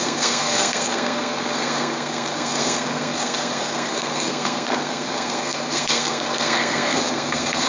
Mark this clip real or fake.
fake